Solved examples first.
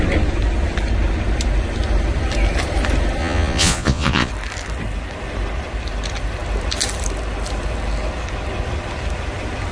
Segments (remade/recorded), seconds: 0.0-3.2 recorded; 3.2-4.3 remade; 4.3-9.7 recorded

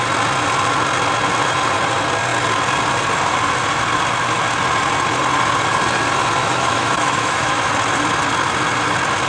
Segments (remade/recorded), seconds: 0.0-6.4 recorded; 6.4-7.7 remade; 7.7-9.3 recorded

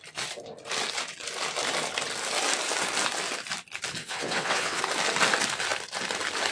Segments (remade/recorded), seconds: 0.0-4.0 recorded; 4.0-4.8 remade; 4.8-6.5 recorded